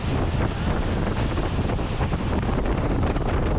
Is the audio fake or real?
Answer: real